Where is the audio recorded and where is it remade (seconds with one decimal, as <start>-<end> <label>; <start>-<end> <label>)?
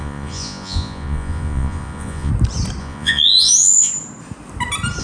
0.0-2.3 remade; 2.3-2.8 recorded; 2.8-3.9 remade; 3.9-5.0 recorded